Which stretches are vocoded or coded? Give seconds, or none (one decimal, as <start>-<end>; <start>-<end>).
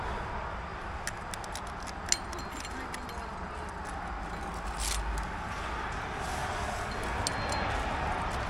none